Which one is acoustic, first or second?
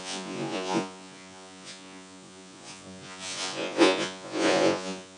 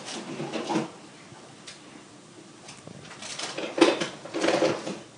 second